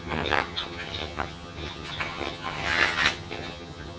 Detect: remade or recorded remade